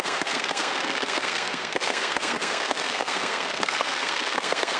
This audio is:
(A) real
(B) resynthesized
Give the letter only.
B